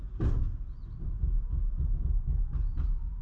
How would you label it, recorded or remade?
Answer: recorded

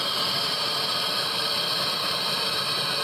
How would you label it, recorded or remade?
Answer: remade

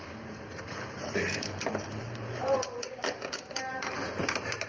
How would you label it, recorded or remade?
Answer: remade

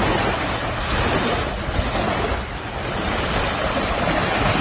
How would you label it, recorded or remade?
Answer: recorded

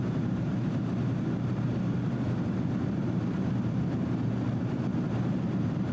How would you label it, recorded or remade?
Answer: remade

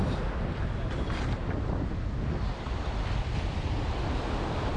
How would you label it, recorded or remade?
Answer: remade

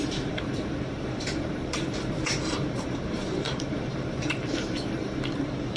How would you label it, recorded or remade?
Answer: remade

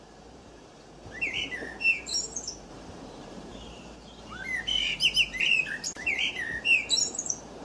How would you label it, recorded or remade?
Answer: remade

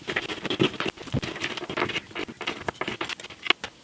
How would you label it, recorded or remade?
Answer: recorded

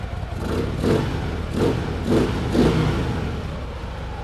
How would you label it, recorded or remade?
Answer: recorded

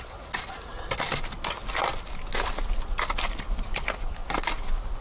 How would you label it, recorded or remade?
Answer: recorded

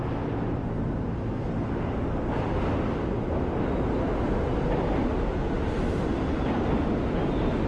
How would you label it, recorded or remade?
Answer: recorded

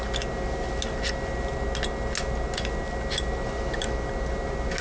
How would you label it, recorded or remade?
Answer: recorded